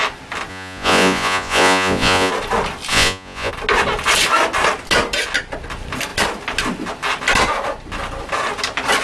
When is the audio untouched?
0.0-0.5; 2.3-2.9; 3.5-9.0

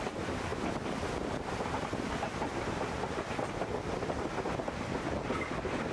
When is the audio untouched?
0.0-5.9